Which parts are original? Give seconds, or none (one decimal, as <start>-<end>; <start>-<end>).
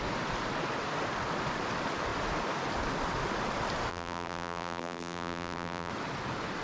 0.0-3.9; 5.9-6.6